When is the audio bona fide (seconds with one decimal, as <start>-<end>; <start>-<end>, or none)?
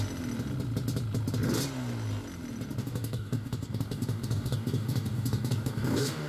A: 0.0-2.8